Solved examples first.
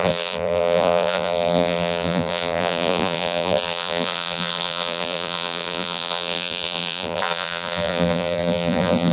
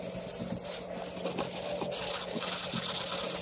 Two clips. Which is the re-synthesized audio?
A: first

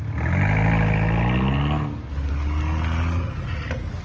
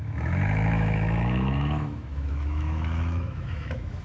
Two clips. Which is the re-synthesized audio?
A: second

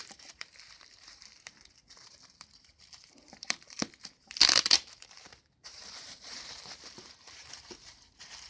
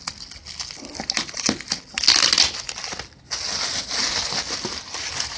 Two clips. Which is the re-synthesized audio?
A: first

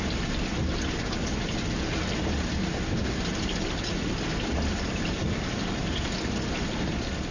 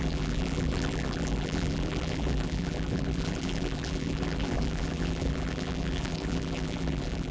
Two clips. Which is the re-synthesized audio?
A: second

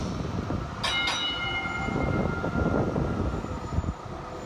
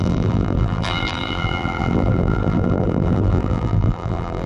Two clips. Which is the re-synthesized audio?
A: second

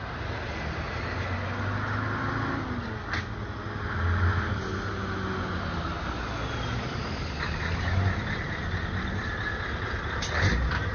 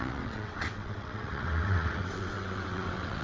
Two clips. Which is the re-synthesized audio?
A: second